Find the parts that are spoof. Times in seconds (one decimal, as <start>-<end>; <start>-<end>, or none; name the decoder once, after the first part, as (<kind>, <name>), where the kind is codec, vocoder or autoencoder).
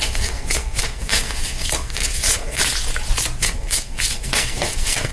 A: 0.0-2.6 (codec, SNAC); 3.4-5.1